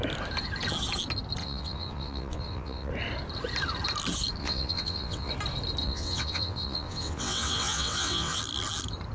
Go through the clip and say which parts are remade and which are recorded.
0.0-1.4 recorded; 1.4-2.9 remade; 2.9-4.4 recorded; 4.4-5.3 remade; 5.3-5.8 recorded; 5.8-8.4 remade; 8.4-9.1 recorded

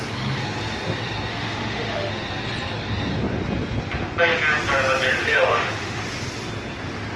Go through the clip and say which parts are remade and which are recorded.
0.0-1.3 recorded; 1.3-2.1 remade; 2.1-5.2 recorded; 5.2-6.0 remade; 6.0-7.2 recorded